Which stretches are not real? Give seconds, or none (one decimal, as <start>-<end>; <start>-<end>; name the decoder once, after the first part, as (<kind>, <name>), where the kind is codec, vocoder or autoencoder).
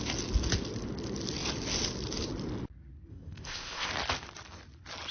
3.1-3.9 (codec, ZipCodec)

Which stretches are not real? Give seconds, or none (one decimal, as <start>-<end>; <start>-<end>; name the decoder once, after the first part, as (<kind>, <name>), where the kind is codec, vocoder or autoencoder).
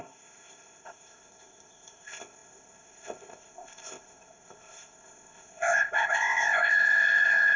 0.0-7.6 (codec, ZipCodec)